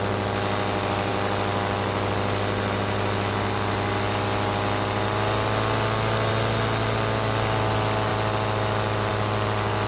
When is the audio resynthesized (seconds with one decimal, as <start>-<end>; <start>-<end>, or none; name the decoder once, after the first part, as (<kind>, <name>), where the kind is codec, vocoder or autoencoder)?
none